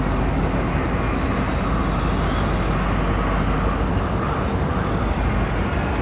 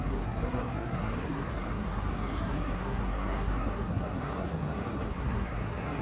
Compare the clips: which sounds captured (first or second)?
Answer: first